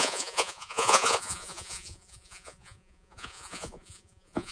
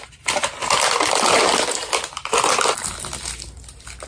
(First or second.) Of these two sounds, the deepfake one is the first